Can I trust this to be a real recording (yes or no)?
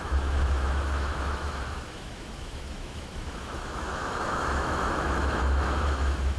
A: no